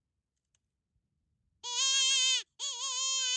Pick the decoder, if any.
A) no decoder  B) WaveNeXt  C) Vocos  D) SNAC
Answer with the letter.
A